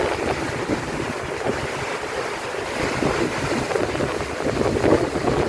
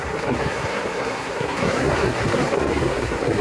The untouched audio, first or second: first